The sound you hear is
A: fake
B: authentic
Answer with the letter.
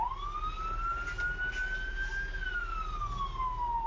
B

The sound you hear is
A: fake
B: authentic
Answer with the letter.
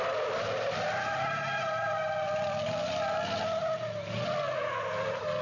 B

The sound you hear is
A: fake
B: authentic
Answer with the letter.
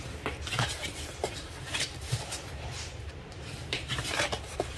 A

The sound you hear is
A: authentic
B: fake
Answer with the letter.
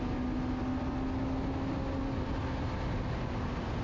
A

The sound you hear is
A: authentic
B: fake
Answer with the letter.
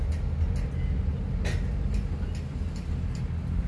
A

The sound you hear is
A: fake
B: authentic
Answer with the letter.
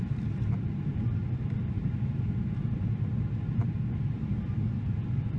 B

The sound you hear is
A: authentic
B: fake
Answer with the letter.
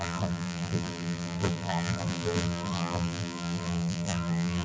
B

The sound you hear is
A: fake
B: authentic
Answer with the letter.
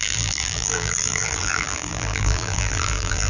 A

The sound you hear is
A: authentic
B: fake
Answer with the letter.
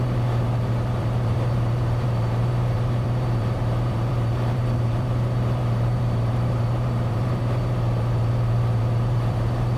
B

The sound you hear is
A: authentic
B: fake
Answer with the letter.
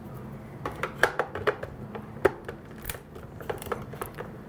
B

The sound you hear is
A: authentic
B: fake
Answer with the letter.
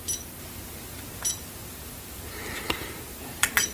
B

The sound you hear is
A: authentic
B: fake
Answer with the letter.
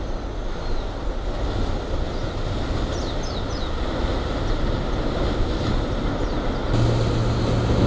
A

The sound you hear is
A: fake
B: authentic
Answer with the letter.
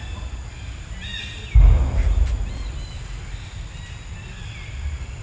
B